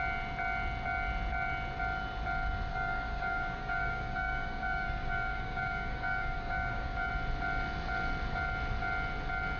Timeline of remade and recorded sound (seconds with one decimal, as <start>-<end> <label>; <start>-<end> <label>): 0.0-2.7 recorded; 2.7-7.1 remade; 7.1-9.6 recorded